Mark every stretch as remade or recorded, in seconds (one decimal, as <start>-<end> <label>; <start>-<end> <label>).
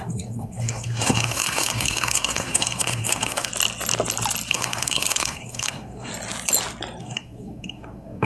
0.0-3.5 remade; 3.5-4.5 recorded; 4.5-6.1 remade; 6.1-7.0 recorded; 7.0-8.2 remade